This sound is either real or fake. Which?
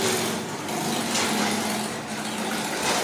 real